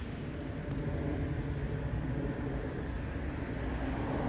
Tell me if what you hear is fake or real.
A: real